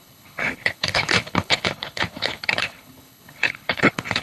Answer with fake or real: fake